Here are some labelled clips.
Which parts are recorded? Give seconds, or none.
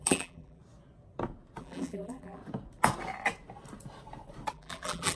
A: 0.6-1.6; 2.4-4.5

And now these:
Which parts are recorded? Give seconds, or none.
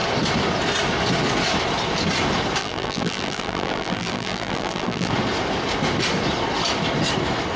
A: 0.0-2.6; 5.1-7.6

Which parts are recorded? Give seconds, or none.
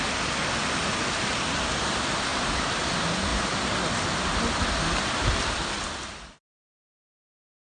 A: 0.0-2.3; 2.8-7.7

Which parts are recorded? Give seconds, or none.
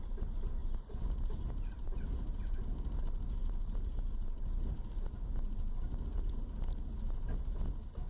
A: 0.0-0.6; 2.4-3.4; 5.4-8.1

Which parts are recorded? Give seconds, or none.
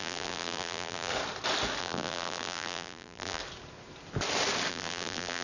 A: 1.1-1.8; 3.4-4.7